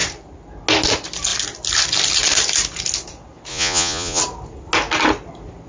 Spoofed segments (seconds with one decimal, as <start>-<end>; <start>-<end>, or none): 3.5-4.2